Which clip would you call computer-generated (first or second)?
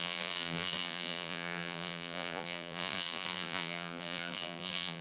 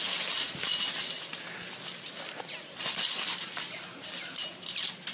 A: first